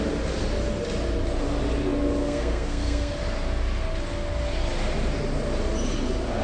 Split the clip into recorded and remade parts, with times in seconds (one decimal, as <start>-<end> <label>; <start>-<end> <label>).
0.0-2.2 recorded; 2.2-3.1 remade; 3.1-6.4 recorded